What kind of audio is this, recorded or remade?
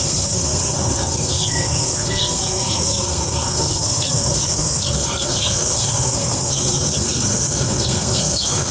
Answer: remade